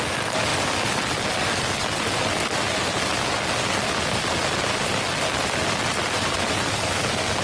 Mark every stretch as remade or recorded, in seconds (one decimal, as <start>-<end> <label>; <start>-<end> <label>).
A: 0.0-7.4 recorded